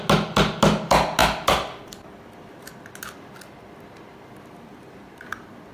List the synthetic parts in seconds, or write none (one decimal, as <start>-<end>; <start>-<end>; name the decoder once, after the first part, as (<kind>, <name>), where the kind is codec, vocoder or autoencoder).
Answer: none